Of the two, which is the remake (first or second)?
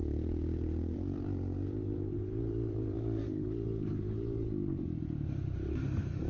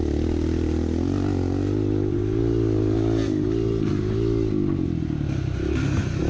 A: first